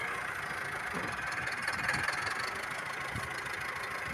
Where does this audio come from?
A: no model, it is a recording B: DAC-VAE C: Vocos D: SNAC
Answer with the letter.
A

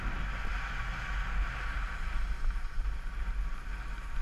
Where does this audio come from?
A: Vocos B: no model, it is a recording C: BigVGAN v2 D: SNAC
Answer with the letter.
B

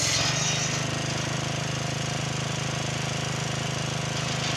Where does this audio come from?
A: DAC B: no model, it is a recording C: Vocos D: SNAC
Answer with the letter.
B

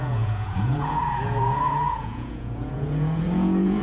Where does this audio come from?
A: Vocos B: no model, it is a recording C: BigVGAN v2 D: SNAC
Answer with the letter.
A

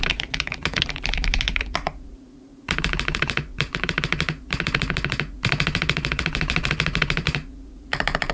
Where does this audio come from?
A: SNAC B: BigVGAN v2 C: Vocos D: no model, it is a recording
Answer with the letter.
C